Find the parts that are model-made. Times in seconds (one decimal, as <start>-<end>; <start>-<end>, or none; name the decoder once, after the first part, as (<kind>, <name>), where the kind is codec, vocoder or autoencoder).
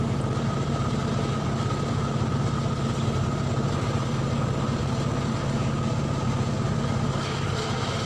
0.0-8.1 (vocoder, BigVGAN v2)